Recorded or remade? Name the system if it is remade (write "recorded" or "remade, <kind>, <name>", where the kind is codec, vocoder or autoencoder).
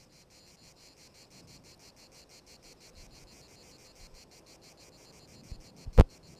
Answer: recorded